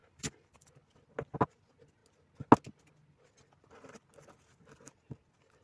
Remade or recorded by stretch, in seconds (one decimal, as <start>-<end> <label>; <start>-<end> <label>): 0.0-0.7 remade; 0.7-5.6 recorded